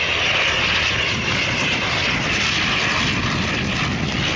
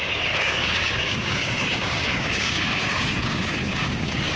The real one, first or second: first